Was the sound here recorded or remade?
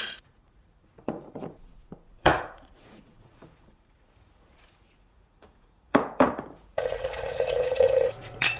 remade